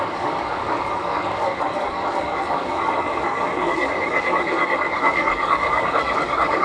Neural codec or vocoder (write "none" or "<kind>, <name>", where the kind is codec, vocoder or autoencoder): codec, DAC